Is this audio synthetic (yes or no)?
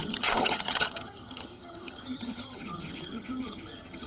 yes